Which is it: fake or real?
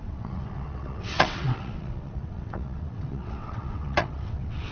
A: fake